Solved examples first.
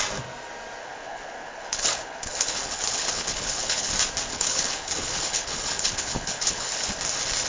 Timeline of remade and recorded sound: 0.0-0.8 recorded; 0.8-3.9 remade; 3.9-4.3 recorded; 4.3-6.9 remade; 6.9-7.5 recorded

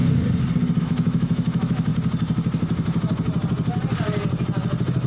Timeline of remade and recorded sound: 0.0-0.8 recorded; 0.8-1.9 remade; 1.9-5.1 recorded

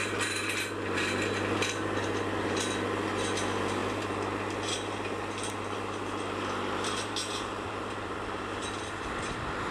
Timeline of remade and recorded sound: 0.0-0.6 remade; 0.6-9.7 recorded

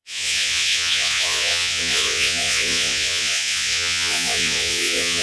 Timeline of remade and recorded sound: 0.0-5.2 remade